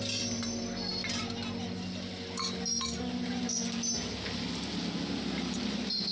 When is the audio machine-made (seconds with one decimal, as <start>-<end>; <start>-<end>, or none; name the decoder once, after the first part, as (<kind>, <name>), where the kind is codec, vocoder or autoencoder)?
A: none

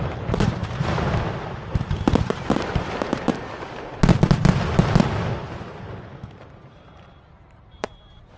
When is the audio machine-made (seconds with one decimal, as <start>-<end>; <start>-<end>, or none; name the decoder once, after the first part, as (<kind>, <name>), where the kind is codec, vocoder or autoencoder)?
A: 0.0-0.6 (vocoder, BigVGAN v2); 2.2-3.3; 6.6-8.4

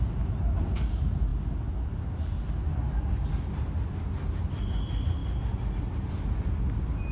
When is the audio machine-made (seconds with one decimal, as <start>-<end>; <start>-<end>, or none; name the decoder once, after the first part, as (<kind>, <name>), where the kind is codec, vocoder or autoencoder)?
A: none

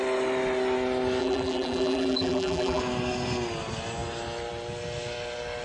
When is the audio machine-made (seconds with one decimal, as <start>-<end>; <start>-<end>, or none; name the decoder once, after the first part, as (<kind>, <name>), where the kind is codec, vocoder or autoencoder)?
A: 1.2-2.8 (vocoder, BigVGAN v2)

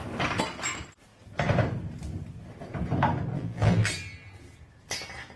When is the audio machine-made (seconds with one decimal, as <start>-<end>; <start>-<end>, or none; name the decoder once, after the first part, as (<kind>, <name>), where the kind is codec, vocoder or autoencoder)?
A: 3.3-3.9 (vocoder, BigVGAN v2)

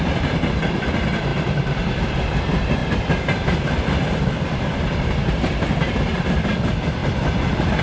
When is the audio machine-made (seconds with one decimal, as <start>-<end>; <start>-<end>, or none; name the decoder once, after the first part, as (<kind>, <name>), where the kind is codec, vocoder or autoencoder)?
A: 0.0-7.8 (vocoder, BigVGAN v2)

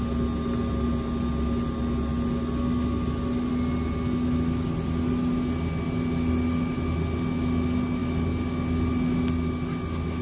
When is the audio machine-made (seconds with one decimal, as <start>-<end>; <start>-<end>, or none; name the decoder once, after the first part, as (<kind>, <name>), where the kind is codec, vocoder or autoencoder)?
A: none

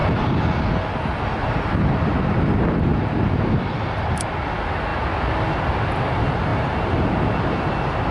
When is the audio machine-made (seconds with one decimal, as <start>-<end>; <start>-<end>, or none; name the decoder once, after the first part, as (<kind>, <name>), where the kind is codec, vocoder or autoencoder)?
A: none